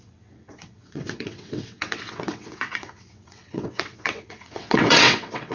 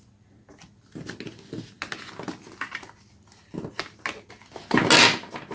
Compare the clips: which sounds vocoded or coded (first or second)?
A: first